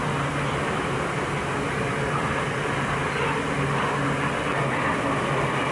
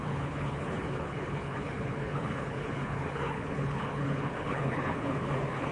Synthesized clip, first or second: second